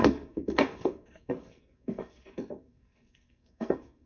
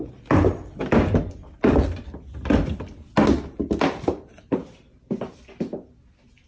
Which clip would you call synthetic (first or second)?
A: first